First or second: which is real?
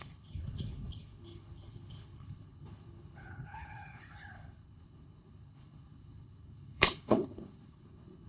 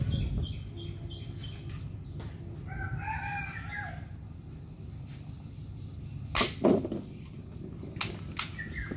second